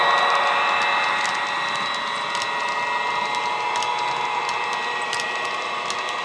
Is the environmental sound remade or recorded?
recorded